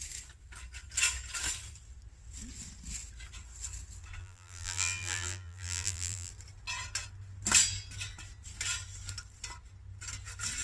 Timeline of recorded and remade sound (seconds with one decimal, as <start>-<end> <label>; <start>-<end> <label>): 0.0-4.2 recorded; 4.2-6.3 remade; 6.3-10.6 recorded